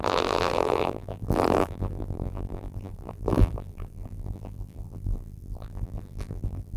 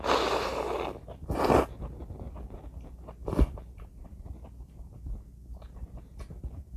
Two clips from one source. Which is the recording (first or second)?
second